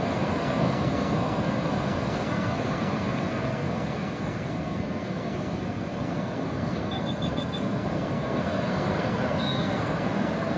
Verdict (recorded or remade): remade